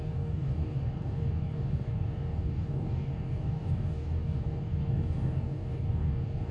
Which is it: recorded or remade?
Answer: remade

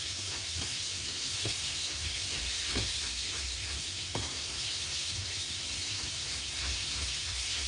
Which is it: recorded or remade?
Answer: remade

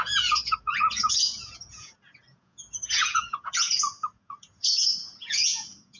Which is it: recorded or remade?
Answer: remade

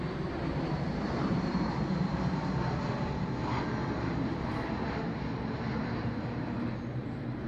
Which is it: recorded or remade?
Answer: remade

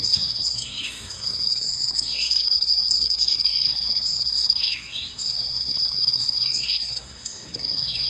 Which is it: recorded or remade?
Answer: remade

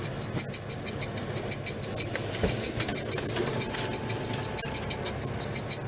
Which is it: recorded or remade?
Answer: recorded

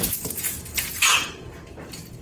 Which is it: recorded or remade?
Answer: remade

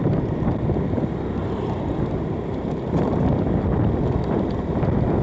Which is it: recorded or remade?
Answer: recorded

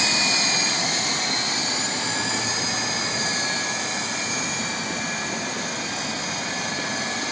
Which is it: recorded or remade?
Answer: recorded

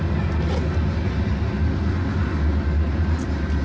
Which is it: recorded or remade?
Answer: recorded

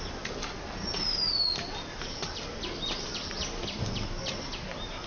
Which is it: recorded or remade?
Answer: recorded